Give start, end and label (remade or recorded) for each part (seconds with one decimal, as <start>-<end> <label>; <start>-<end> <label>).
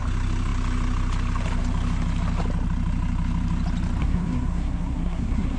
0.0-4.0 recorded; 4.0-5.6 remade